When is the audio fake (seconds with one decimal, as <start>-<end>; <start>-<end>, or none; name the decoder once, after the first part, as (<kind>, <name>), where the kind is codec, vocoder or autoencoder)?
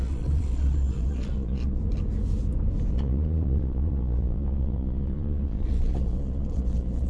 0.0-1.8 (vocoder, Vocos); 2.9-7.1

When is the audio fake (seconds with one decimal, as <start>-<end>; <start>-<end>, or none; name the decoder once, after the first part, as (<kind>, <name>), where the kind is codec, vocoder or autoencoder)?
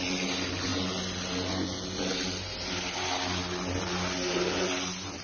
none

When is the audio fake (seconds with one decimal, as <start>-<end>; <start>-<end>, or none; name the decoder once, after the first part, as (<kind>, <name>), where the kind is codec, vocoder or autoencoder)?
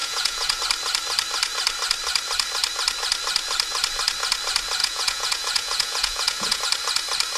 0.0-0.6 (vocoder, Vocos); 4.8-6.6